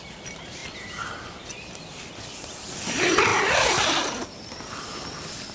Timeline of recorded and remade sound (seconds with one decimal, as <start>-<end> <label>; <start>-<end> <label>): 0.0-5.5 recorded